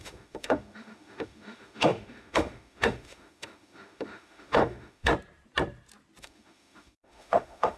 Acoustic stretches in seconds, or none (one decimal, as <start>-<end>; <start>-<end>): 5.1-6.2